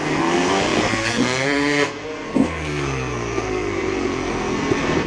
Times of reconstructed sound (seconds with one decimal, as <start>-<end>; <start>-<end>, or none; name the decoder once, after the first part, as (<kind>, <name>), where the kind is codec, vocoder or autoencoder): 0.0-5.1 (codec, SNAC)